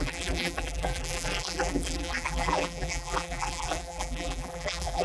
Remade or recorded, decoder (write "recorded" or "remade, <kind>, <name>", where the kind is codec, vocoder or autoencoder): remade, vocoder, BigVGAN v2